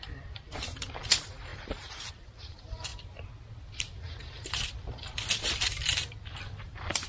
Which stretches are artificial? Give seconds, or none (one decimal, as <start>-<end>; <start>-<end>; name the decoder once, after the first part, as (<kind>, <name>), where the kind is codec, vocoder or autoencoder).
0.0-2.9 (vocoder, BigVGAN v2); 5.4-7.1